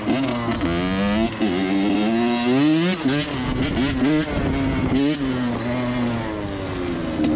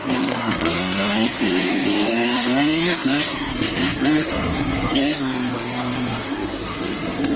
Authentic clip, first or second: first